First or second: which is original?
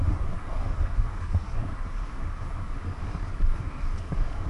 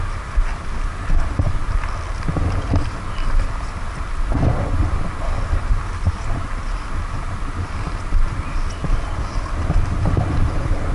second